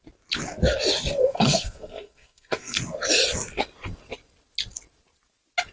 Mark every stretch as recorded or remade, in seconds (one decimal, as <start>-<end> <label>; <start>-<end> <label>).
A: 0.0-1.2 recorded; 1.2-2.8 remade; 2.8-5.7 recorded